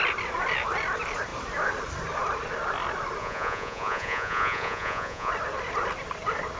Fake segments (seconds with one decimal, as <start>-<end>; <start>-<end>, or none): 3.2-5.3